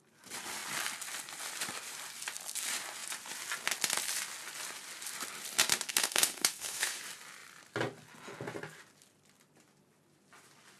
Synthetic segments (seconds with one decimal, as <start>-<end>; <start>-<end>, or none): 5.9-7.0